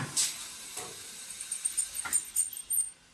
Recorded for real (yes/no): yes